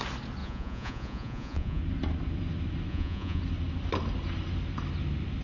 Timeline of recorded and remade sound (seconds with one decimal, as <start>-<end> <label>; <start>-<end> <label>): 0.0-0.4 recorded; 0.4-1.8 remade; 1.8-2.9 recorded; 2.9-3.4 remade; 3.4-5.4 recorded